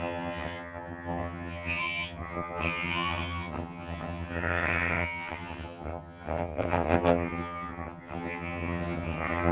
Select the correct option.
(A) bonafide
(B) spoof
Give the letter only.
B